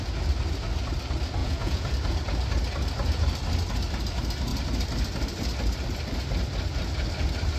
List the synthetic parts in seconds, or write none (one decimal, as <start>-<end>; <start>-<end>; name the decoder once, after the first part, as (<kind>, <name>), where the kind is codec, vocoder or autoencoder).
1.4-1.9 (vocoder, Vocos)